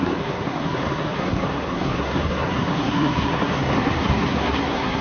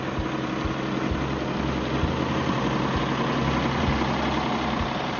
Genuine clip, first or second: second